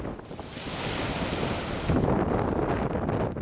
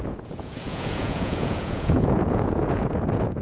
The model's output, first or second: second